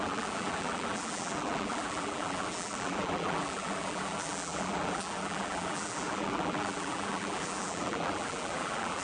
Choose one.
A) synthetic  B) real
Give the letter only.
A